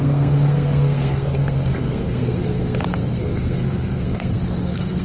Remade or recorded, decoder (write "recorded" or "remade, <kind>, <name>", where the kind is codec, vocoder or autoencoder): remade, codec, SNAC